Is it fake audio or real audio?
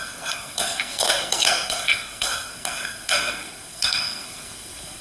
fake